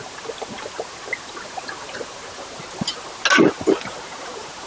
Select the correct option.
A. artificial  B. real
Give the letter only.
B